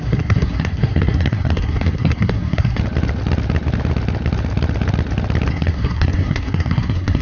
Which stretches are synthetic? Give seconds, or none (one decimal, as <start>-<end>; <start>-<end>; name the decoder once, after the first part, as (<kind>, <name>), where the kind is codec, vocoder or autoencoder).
0.0-2.8 (codec, SNAC); 5.5-7.2